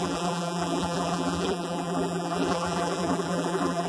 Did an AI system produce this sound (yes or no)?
yes